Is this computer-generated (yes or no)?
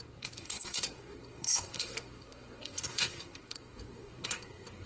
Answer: yes